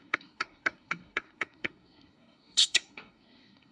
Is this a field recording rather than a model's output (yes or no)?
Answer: no